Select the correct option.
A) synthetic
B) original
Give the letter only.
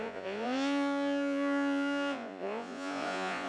A